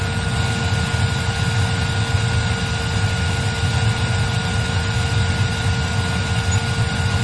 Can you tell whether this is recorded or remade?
recorded